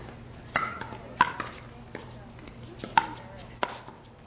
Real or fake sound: real